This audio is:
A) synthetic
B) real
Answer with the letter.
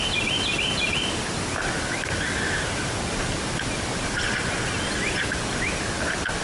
B